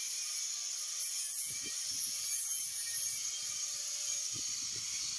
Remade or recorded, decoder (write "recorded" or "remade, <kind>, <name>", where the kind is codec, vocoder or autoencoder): recorded